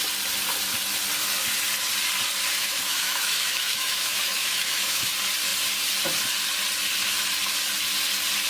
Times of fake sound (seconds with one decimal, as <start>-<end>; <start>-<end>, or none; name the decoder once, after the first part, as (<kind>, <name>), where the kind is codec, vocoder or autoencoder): 2.6-5.1 (autoencoder, DAC-VAE)